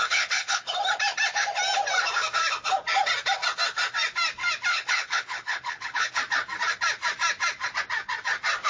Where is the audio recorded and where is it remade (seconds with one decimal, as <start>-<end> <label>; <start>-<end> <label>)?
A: 0.0-0.7 remade; 0.7-4.7 recorded; 4.7-6.2 remade; 6.2-8.7 recorded